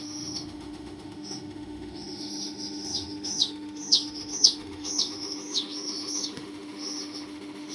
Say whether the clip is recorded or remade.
remade